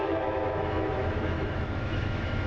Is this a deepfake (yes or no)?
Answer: yes